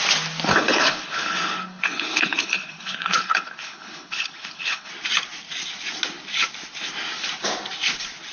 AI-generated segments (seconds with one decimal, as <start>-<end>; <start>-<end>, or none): 0.5-4.9